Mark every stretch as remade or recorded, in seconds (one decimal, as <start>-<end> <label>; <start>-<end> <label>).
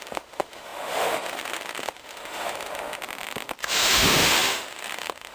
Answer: 0.0-3.0 remade; 3.0-3.6 recorded; 3.6-5.3 remade